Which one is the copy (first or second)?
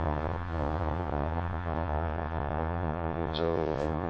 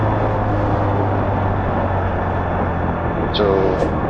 first